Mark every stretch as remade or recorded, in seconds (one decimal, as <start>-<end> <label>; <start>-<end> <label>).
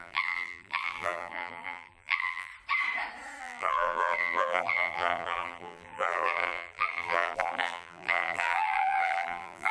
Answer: 0.0-2.5 remade; 2.5-3.4 recorded; 3.4-9.7 remade